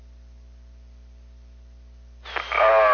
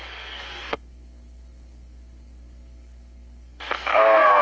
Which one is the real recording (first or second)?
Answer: first